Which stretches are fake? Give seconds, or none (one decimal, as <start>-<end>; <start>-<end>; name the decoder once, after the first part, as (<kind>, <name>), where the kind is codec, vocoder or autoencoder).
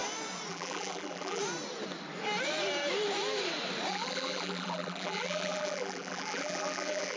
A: 0.5-1.4 (vocoder, BigVGAN v2); 3.9-7.2